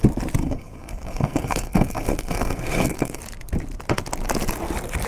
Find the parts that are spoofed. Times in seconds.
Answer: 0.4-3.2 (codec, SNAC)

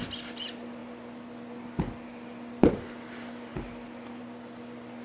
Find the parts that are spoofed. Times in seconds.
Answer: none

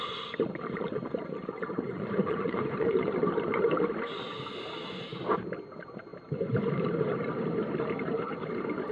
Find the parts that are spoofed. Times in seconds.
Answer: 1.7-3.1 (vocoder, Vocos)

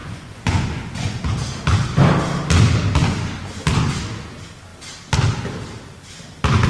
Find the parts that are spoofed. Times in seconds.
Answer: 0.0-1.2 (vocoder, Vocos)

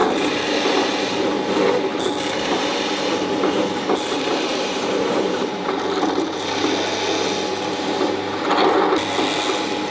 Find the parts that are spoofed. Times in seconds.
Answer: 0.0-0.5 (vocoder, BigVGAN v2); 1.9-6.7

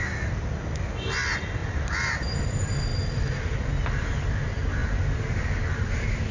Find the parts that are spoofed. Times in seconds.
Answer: 1.6-2.4 (vocoder, BigVGAN v2)

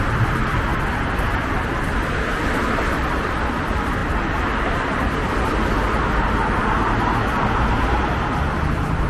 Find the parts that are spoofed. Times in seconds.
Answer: none

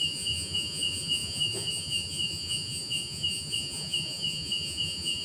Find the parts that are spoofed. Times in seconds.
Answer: 0.0-5.2 (vocoder, Vocos)